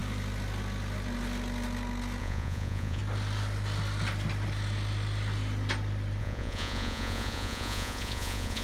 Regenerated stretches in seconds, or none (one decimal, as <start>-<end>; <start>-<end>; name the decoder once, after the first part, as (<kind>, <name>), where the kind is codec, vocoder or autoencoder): 2.2-3.0 (vocoder, Vocos); 6.2-8.6